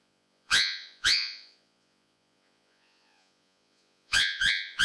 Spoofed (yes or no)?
yes